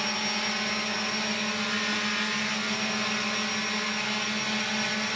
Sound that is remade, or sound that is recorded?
recorded